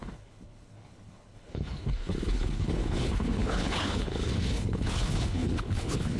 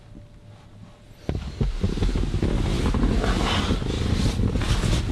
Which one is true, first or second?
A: second